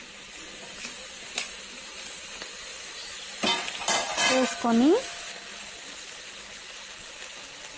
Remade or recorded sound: recorded